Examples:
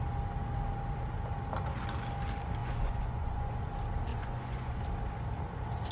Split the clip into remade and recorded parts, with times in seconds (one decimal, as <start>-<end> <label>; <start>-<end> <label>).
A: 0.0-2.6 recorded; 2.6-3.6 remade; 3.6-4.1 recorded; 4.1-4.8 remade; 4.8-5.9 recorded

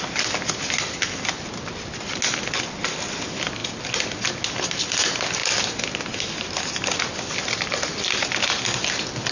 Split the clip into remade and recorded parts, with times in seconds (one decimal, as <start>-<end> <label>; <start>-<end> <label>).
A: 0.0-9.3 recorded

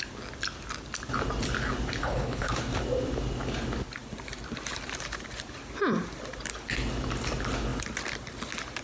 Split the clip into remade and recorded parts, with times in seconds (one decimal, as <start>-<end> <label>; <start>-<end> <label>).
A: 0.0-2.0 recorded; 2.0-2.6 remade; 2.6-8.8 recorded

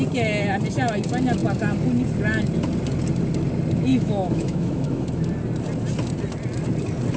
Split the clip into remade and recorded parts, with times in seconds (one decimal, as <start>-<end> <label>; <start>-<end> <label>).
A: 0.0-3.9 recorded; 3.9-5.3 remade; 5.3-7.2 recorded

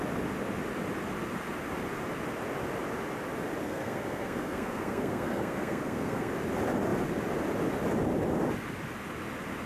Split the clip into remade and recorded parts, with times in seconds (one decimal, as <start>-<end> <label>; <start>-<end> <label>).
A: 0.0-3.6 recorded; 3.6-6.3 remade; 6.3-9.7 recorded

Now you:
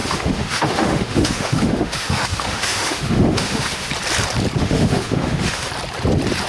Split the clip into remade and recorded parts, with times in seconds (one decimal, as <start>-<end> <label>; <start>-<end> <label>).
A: 0.0-3.9 remade; 3.9-4.6 recorded; 4.6-5.7 remade; 5.7-6.5 recorded

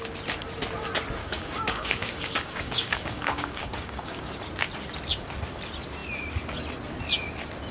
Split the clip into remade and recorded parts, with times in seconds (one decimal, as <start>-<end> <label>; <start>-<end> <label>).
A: 0.0-1.2 recorded; 1.2-4.4 remade; 4.4-7.7 recorded